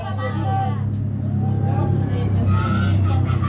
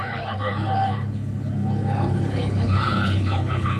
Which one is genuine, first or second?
first